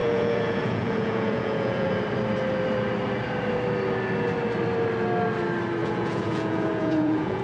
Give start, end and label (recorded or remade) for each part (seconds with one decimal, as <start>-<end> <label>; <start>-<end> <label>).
0.0-2.0 remade; 2.0-5.8 recorded; 5.8-7.4 remade